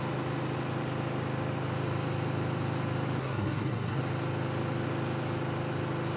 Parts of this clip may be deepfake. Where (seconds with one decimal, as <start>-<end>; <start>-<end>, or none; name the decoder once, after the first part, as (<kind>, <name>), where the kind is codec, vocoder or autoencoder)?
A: 3.2-4.0 (codec, SNAC)